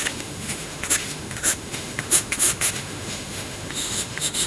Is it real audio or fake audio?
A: fake